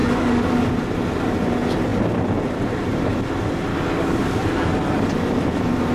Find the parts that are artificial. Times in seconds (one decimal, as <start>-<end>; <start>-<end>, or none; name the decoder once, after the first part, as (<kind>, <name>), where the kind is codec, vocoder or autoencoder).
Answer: 0.0-0.7 (codec, DAC); 3.7-4.4